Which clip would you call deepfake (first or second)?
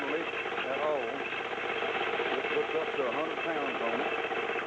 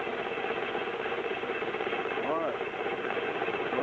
second